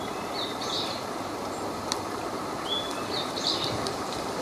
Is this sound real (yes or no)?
yes